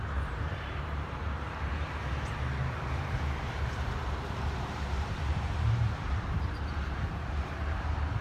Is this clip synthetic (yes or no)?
yes